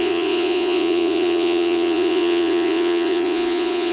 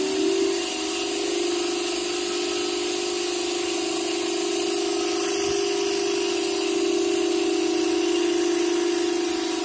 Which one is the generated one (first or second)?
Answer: first